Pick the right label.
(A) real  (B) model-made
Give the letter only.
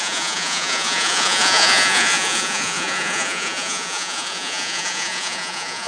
B